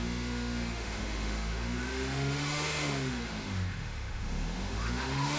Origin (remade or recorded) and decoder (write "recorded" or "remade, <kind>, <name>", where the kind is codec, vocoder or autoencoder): remade, autoencoder, DAC-VAE